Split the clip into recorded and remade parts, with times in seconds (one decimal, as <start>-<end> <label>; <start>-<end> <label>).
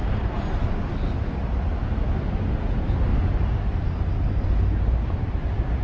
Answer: 0.0-5.8 recorded